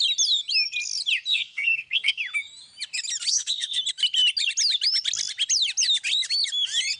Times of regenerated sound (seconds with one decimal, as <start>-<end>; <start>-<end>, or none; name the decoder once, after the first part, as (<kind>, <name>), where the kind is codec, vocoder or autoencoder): 1.3-2.2 (codec, SNAC); 3.3-3.8